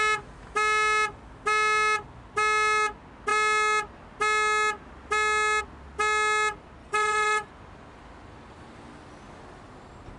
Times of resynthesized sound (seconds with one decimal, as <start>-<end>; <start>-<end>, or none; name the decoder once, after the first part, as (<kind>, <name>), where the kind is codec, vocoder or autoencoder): 6.8-7.5 (vocoder, Vocos)

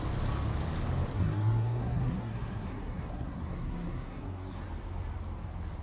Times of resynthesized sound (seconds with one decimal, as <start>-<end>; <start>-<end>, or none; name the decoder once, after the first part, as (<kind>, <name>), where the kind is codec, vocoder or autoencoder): 1.1-4.6 (codec, SNAC)

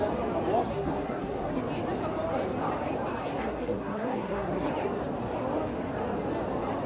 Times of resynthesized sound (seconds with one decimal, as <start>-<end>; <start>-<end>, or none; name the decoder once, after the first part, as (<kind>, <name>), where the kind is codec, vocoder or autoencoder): 0.7-1.6 (codec, SNAC); 3.2-4.7

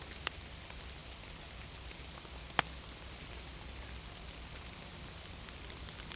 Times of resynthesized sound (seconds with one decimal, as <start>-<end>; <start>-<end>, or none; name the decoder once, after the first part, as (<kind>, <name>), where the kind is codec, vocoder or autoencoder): none

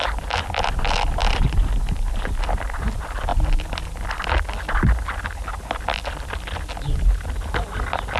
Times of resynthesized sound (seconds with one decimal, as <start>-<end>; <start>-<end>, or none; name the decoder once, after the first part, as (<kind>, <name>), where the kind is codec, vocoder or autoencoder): none

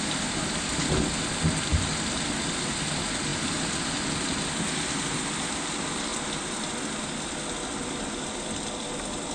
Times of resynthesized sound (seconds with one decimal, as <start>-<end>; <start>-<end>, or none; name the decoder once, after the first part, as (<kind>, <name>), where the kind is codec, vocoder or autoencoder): none

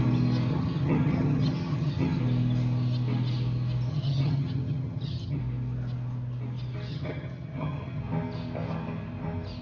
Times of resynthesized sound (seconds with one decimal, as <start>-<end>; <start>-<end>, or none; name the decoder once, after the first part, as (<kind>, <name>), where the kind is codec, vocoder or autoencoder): 0.5-2.2 (vocoder, HiFi-GAN); 3.9-5.4; 6.9-8.0

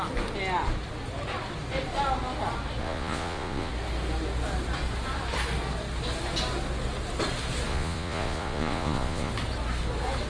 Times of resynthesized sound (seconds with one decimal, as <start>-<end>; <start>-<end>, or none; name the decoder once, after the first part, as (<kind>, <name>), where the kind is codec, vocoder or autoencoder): 2.8-3.7 (vocoder, Vocos); 7.7-9.3